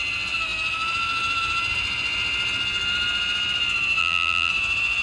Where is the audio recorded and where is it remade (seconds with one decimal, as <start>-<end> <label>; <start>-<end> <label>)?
0.0-4.0 recorded; 4.0-4.5 remade; 4.5-5.0 recorded